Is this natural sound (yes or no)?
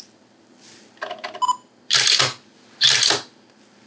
yes